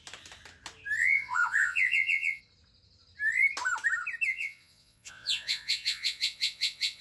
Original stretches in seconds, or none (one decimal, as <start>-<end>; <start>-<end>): 0.0-1.0; 2.4-4.3